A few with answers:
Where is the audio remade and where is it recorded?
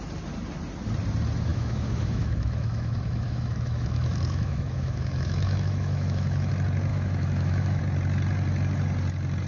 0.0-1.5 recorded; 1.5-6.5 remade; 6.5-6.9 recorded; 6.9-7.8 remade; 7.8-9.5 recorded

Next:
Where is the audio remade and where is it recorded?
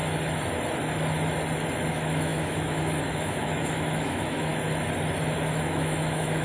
0.0-1.9 recorded; 1.9-4.5 remade; 4.5-5.5 recorded; 5.5-6.4 remade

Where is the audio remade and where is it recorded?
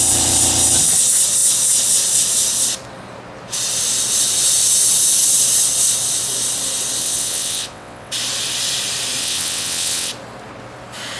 0.0-7.0 recorded; 7.0-8.1 remade; 8.1-9.2 recorded; 9.2-10.1 remade; 10.1-11.2 recorded